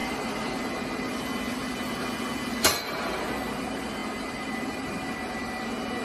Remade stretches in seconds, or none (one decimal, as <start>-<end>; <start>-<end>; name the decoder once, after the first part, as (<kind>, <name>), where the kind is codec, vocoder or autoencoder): none